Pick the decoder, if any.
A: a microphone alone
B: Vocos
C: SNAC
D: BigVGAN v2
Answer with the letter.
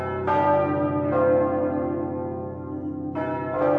A